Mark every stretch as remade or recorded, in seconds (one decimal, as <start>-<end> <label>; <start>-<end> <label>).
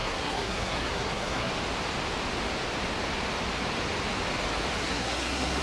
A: 0.0-1.5 remade; 1.5-4.8 recorded; 4.8-5.6 remade